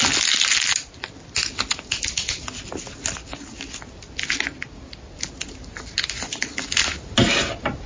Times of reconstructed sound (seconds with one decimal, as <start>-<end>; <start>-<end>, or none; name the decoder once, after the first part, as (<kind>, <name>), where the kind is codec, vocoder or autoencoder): none